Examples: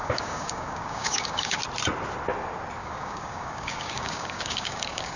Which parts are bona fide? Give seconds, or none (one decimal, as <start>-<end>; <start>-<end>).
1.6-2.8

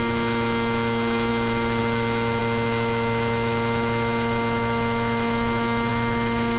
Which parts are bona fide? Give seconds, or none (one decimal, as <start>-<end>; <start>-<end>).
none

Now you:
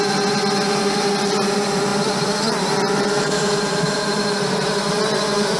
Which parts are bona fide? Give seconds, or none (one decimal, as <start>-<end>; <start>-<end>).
0.0-1.9

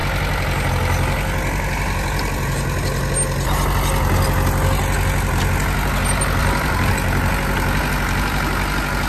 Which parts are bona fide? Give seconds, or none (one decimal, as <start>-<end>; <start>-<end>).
0.0-6.4; 6.9-9.1

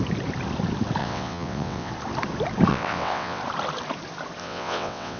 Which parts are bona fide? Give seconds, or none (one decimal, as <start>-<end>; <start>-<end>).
0.0-1.0; 1.9-2.7; 3.4-4.4

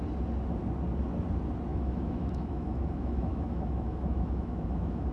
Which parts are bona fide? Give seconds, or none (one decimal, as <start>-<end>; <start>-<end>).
0.0-1.7

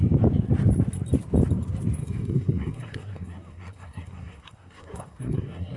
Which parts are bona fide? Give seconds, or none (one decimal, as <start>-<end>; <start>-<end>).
0.0-2.0